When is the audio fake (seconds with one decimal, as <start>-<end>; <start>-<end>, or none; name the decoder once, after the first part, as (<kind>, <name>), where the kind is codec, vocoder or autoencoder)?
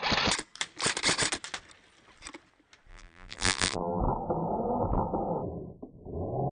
2.9-4.0 (vocoder, BigVGAN v2)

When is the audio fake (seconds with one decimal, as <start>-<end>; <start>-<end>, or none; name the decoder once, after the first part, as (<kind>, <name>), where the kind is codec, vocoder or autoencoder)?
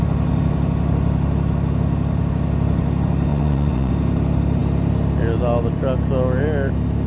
3.3-3.9 (vocoder, Vocos)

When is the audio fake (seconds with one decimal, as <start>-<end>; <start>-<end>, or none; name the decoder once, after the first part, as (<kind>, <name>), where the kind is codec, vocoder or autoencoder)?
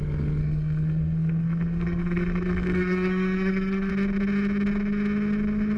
0.4-3.9 (codec, SNAC)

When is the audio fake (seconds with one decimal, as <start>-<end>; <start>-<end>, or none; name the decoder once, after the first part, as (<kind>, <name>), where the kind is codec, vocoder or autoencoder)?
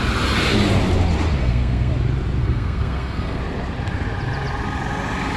1.4-1.9 (codec, SNAC); 2.4-3.4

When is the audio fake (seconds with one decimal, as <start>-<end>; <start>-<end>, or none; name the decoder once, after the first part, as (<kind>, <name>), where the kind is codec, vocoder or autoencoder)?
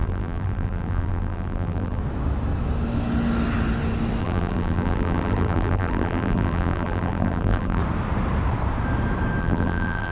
0.0-2.0 (vocoder, BigVGAN v2); 4.2-7.8; 9.4-10.1